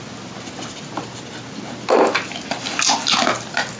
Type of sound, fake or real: real